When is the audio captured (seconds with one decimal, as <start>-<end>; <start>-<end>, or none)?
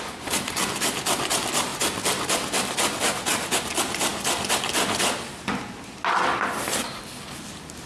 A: 0.0-7.9